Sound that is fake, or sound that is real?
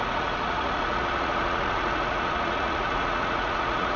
fake